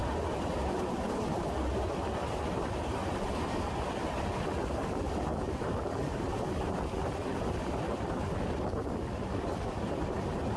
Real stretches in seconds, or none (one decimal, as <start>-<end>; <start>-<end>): 0.0-10.6